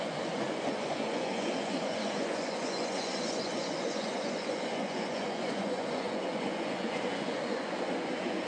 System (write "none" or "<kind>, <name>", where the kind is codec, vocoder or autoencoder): vocoder, Vocos